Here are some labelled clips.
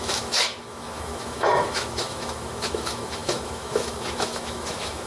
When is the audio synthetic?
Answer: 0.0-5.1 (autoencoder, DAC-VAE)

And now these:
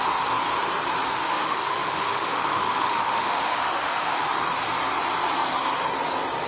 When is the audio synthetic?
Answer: 1.1-4.2 (autoencoder, DAC-VAE)